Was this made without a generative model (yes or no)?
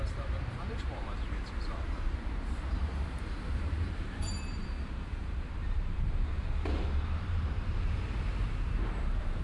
no